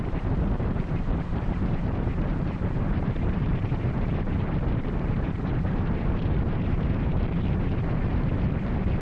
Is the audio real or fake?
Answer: fake